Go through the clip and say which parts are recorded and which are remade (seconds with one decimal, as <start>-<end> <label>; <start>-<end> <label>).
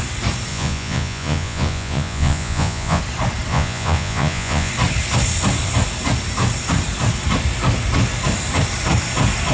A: 0.0-0.5 recorded; 0.5-3.0 remade; 3.0-3.5 recorded; 3.5-4.7 remade; 4.7-9.5 recorded